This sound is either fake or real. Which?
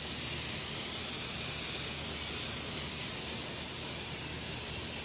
real